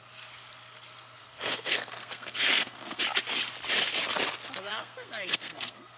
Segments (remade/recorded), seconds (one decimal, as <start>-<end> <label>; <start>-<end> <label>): 0.0-1.2 recorded; 1.2-3.0 remade; 3.0-4.7 recorded; 4.7-6.0 remade